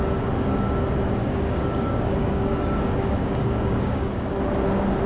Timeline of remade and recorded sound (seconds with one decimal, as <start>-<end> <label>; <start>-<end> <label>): 0.0-1.2 recorded; 1.2-4.3 remade; 4.3-5.1 recorded